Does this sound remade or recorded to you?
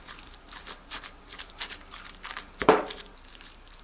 remade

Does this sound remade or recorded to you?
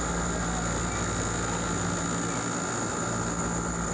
recorded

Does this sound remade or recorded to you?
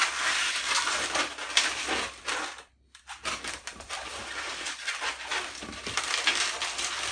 remade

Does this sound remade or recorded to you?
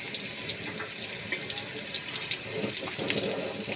recorded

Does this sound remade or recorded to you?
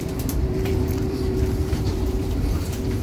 remade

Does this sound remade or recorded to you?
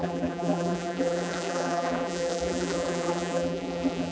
remade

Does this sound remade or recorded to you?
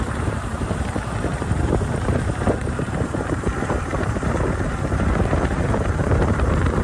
remade